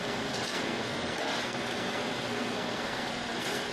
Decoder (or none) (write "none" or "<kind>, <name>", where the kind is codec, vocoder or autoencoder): codec, SNAC